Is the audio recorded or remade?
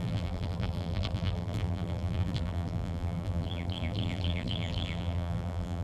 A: remade